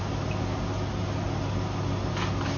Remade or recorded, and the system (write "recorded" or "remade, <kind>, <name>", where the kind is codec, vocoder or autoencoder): recorded